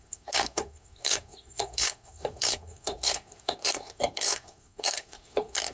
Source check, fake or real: fake